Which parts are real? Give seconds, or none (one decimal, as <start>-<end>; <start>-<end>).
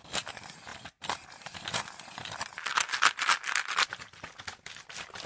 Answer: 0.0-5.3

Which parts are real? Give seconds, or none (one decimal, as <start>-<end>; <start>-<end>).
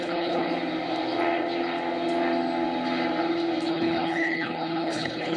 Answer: 0.5-3.7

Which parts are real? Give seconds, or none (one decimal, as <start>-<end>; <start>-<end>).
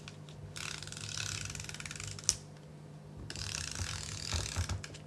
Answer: 0.0-5.1